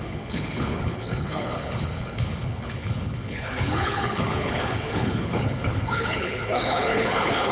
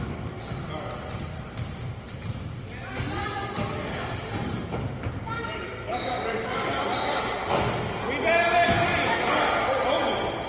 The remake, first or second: first